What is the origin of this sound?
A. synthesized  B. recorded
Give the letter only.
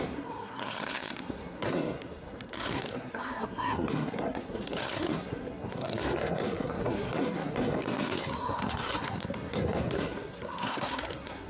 A